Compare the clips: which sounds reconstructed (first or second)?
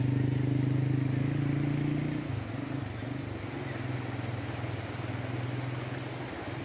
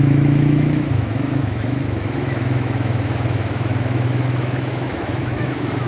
second